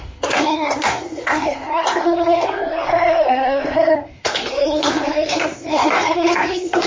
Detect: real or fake fake